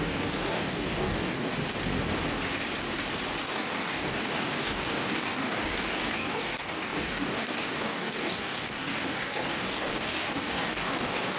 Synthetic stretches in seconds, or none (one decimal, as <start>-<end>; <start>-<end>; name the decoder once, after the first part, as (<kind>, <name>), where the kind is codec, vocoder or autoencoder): 0.0-1.5 (codec, DAC); 3.4-11.4